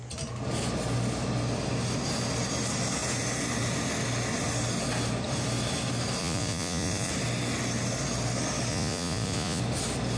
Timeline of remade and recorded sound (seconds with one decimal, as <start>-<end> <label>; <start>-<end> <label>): 0.0-6.2 recorded; 6.2-7.1 remade; 7.1-8.7 recorded; 8.7-9.6 remade; 9.6-10.2 recorded